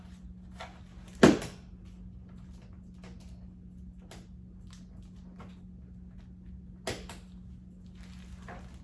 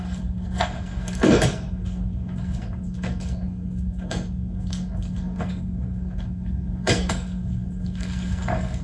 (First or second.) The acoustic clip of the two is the first